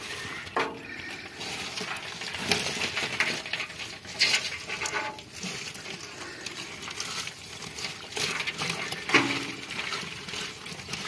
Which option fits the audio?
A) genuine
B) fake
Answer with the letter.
A